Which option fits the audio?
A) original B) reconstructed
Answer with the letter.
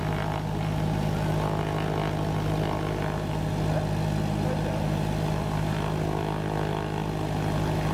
A